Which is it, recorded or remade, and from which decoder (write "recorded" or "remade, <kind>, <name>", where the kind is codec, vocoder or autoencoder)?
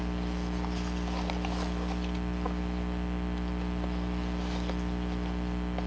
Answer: remade, vocoder, BigVGAN v2